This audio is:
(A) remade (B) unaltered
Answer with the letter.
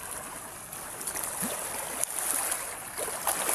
B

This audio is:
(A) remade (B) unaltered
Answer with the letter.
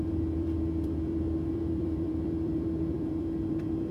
A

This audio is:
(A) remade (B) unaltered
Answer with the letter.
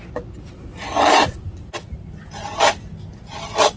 B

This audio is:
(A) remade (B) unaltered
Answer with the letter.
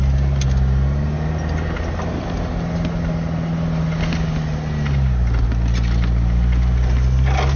B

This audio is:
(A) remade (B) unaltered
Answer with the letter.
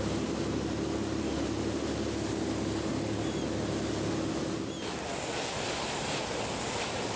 B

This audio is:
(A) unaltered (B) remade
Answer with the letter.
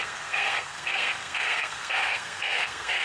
B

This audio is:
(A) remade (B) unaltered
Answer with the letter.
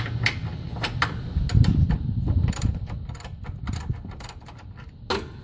B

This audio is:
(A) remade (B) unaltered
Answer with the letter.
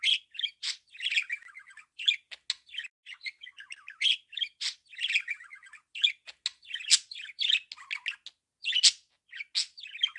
B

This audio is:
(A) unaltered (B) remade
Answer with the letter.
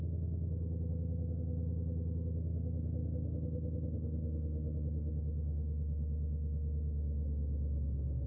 B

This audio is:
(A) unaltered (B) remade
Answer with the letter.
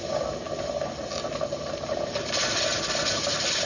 A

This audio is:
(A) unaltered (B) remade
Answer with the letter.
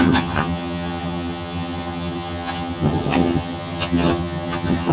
B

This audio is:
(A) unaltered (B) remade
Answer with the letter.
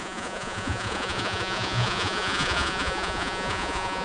B